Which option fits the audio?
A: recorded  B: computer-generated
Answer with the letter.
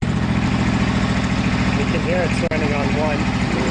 A